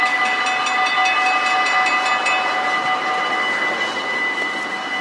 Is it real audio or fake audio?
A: real